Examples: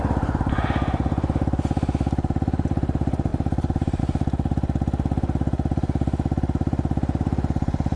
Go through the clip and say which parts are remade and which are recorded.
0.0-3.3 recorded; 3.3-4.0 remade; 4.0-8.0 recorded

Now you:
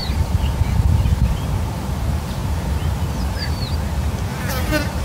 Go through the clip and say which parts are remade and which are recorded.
0.0-2.0 remade; 2.0-5.0 recorded

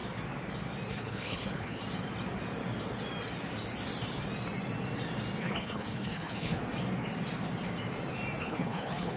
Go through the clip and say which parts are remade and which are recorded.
0.0-0.9 recorded; 0.9-1.8 remade; 1.8-5.4 recorded; 5.4-6.6 remade; 6.6-8.4 recorded; 8.4-9.2 remade

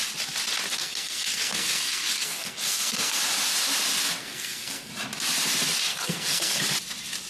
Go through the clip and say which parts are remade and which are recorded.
0.0-0.8 recorded; 0.8-3.2 remade; 3.2-4.2 recorded; 4.2-4.9 remade; 4.9-5.9 recorded; 5.9-6.6 remade; 6.6-7.3 recorded

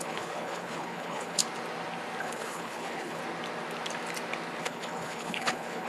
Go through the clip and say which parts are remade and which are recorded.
0.0-1.4 remade; 1.4-2.2 recorded; 2.2-3.2 remade; 3.2-4.6 recorded; 4.6-5.9 remade

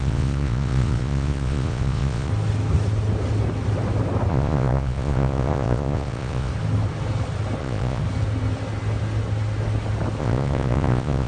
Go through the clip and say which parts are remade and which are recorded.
0.0-2.3 remade; 2.3-4.3 recorded; 4.3-6.5 remade; 6.5-7.6 recorded; 7.6-8.0 remade; 8.0-10.2 recorded; 10.2-11.3 remade

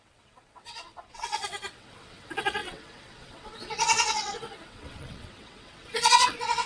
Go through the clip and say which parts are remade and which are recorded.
0.0-6.7 remade

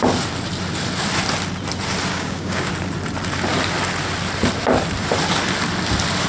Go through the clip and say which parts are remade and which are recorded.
0.0-2.1 recorded; 2.1-2.7 remade; 2.7-6.3 recorded